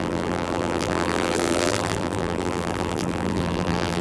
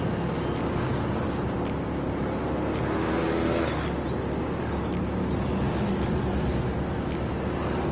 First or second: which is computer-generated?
first